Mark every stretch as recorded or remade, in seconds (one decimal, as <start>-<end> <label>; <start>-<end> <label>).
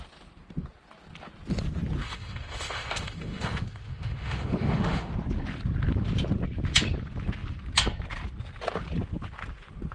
0.0-2.0 recorded; 2.0-5.1 remade; 5.1-9.9 recorded